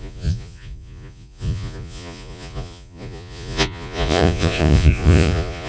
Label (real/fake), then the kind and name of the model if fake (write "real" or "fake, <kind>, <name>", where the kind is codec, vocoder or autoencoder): fake, vocoder, Vocos